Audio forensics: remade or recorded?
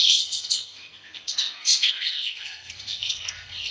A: remade